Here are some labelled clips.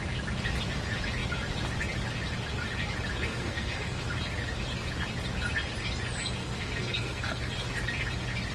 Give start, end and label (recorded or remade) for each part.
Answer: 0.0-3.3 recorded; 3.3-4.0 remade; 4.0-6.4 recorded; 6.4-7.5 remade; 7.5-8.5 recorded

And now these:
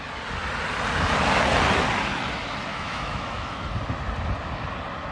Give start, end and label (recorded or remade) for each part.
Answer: 0.0-2.7 recorded; 2.7-3.7 remade; 3.7-5.1 recorded

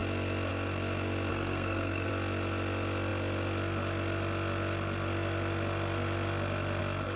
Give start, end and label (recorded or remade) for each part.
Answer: 0.0-1.3 recorded; 1.3-2.1 remade; 2.1-7.2 recorded

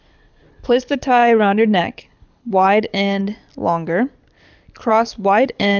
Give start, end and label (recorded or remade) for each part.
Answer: 0.0-3.2 remade; 3.2-4.9 recorded; 4.9-5.8 remade

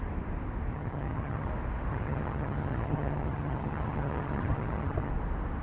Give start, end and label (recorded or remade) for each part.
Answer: 0.0-0.7 recorded; 0.7-1.5 remade; 1.5-1.9 recorded; 1.9-5.1 remade; 5.1-5.6 recorded

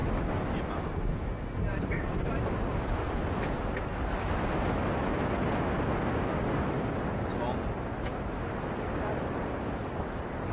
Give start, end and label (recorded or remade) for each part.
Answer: 0.0-0.8 remade; 0.8-1.7 recorded; 1.7-5.9 remade; 5.9-10.5 recorded

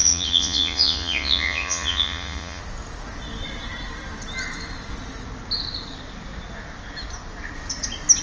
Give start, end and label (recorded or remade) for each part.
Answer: 0.0-2.6 remade; 2.6-8.2 recorded

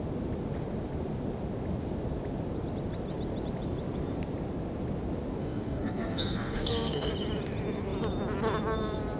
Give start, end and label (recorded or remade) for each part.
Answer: 0.0-5.4 recorded; 5.4-7.1 remade; 7.1-9.2 recorded